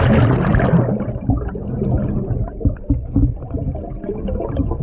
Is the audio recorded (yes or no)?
yes